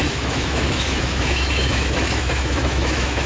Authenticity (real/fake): fake